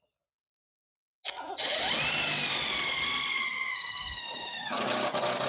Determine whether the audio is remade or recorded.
recorded